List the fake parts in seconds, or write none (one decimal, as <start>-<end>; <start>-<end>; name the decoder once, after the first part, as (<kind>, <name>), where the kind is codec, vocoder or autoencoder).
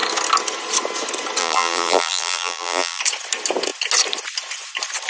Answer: 1.4-3.0 (vocoder, BigVGAN v2)